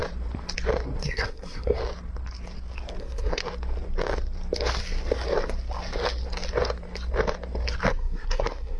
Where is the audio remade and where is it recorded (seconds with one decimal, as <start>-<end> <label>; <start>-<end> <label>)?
0.0-1.0 recorded; 1.0-1.8 remade; 1.8-3.0 recorded; 3.0-3.4 remade; 3.4-7.9 recorded; 7.9-8.8 remade